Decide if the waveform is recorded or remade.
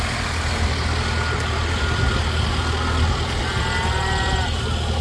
recorded